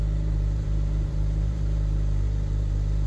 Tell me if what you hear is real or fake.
fake